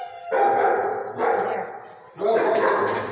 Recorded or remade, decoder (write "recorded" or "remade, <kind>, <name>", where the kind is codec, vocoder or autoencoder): recorded